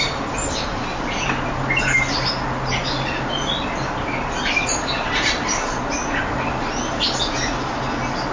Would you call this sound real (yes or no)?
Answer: yes